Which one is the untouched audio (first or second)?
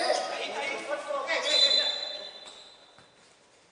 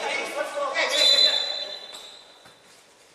first